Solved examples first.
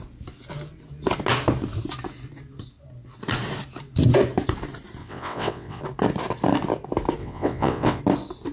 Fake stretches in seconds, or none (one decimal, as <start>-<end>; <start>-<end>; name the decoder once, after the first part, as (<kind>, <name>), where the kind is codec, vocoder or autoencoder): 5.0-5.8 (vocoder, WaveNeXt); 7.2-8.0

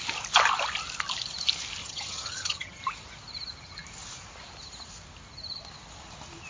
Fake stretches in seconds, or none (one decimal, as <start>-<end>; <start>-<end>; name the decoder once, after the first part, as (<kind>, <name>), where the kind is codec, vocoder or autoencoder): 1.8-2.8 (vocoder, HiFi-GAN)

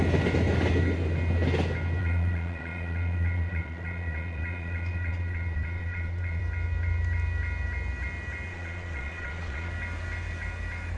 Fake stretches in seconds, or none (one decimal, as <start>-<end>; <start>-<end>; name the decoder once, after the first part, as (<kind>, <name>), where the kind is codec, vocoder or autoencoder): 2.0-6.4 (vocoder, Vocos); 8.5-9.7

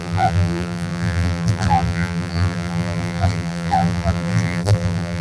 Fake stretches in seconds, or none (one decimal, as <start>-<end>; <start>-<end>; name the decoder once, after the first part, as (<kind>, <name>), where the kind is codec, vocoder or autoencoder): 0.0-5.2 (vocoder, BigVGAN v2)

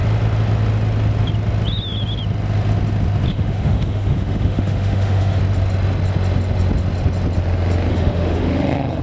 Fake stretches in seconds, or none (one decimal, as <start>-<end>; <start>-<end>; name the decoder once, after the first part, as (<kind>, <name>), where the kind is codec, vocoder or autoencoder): 3.3-5.4 (autoencoder, DAC-VAE); 7.9-9.0